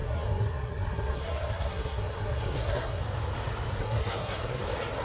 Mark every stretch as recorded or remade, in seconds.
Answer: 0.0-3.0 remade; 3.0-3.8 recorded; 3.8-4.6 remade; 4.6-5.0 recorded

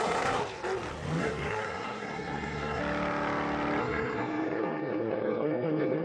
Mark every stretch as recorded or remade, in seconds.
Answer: 0.0-0.4 remade; 0.4-1.2 recorded; 1.2-2.8 remade; 2.8-3.8 recorded; 3.8-6.0 remade

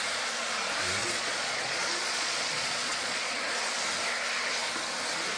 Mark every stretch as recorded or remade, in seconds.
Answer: 0.0-1.0 recorded; 1.0-3.4 remade; 3.4-5.4 recorded

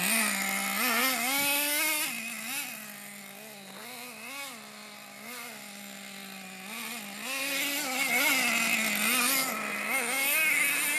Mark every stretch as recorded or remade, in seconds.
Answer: 0.0-11.0 recorded

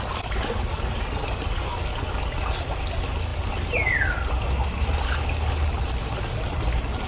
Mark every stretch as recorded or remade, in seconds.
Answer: 0.0-7.1 recorded

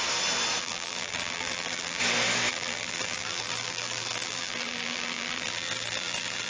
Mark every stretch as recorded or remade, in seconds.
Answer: 0.0-0.6 recorded; 0.6-2.0 remade; 2.0-2.5 recorded; 2.5-6.5 remade

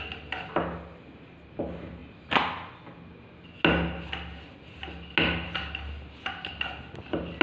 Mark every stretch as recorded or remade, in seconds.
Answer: 0.0-7.4 recorded

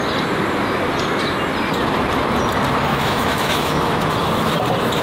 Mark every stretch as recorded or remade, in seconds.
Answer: 0.0-2.9 recorded; 2.9-4.1 remade; 4.1-5.0 recorded